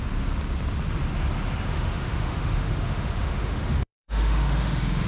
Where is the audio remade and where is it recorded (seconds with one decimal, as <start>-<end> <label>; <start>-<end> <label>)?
0.0-1.7 recorded; 1.7-5.1 remade